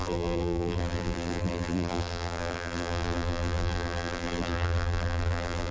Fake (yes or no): yes